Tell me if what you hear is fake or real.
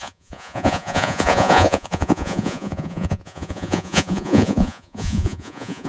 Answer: fake